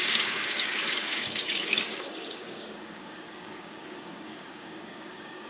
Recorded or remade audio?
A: remade